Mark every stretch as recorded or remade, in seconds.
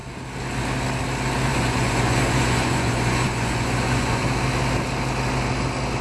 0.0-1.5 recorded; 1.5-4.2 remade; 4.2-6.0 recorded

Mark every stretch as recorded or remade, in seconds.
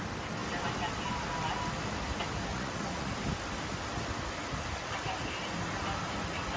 0.0-2.5 recorded; 2.5-3.1 remade; 3.1-6.6 recorded